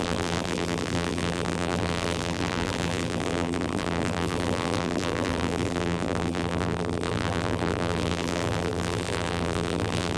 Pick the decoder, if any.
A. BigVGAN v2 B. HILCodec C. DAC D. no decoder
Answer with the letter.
A